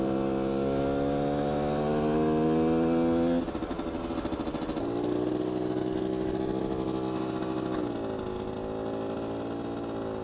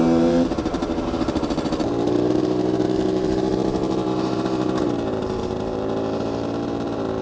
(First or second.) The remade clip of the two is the second